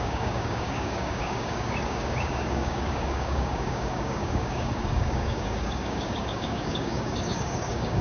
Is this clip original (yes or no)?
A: no